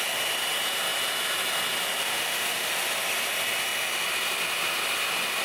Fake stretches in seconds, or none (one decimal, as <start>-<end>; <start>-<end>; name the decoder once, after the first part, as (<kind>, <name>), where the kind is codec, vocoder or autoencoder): 2.0-2.7 (autoencoder, DAC-VAE)